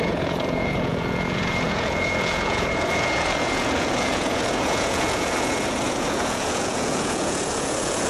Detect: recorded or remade remade